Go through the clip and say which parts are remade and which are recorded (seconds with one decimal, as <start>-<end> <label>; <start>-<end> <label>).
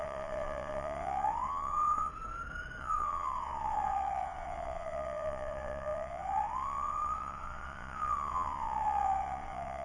0.0-2.1 remade; 2.1-2.8 recorded; 2.8-9.8 remade